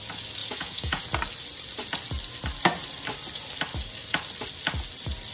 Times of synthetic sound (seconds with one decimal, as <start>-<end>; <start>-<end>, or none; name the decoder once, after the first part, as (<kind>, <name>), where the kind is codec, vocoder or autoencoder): 0.4-1.0 (vocoder, Vocos)